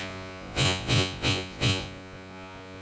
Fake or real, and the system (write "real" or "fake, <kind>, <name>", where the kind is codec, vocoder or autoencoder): fake, vocoder, Vocos